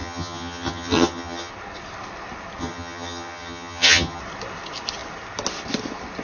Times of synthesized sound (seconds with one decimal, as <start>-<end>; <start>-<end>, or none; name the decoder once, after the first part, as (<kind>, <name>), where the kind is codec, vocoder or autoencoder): 0.0-1.5 (vocoder, HiFi-GAN); 2.6-4.2